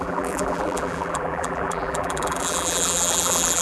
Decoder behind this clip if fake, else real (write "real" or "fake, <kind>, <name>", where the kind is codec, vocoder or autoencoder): fake, vocoder, BigVGAN v2